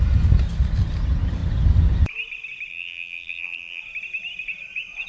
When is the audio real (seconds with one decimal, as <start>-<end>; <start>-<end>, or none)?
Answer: 0.0-2.7; 3.8-5.1